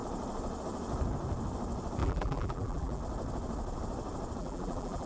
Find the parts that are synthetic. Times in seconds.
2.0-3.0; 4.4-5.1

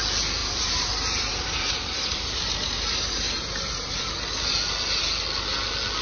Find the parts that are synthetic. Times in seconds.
0.4-4.0

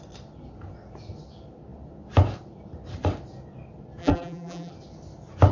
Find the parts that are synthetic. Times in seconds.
4.0-4.7

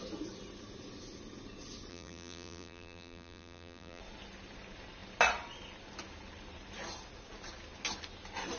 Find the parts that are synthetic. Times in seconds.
1.9-4.0

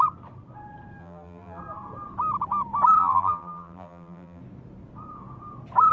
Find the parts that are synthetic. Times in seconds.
1.0-1.6; 3.0-4.4

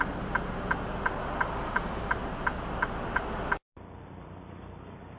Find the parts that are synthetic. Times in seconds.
none